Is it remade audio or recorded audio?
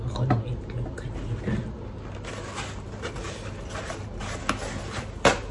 recorded